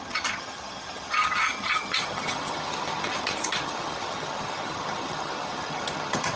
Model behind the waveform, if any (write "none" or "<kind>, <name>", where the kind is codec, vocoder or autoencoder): vocoder, HiFi-GAN